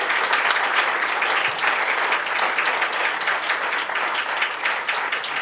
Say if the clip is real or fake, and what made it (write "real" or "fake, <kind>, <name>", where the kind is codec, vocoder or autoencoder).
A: real